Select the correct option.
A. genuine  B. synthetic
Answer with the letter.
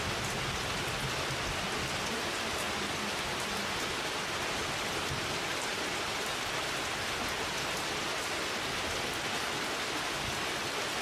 A